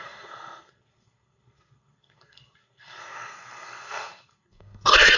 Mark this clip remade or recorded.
remade